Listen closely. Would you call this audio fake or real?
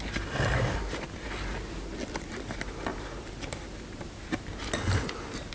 real